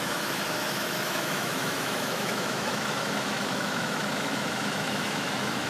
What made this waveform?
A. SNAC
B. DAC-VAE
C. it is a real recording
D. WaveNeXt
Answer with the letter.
B